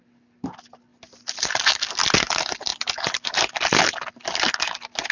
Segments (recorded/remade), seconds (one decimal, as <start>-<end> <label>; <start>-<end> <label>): 0.0-5.1 recorded